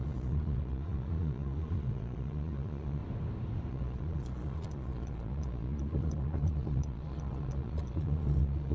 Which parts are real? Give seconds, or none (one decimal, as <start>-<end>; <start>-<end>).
3.0-3.7